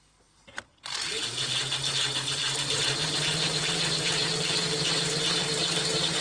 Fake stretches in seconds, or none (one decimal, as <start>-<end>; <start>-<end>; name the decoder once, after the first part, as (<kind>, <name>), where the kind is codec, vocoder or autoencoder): 0.0-6.2 (vocoder, BigVGAN v2)